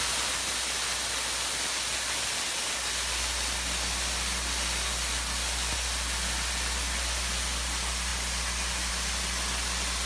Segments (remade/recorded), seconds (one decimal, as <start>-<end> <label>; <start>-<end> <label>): 0.0-10.1 recorded